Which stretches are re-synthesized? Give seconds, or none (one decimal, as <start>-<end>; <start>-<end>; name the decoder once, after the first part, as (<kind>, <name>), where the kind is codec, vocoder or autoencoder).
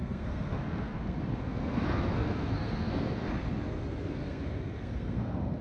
0.0-5.6 (codec, SNAC)